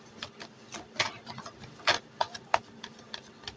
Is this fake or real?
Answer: real